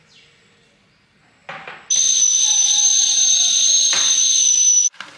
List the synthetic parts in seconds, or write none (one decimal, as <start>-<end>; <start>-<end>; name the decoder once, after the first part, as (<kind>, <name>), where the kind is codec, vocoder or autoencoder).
none